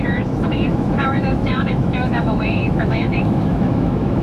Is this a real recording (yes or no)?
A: no